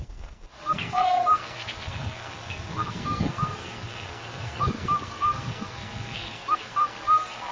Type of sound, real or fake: fake